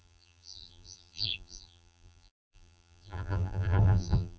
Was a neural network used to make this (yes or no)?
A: yes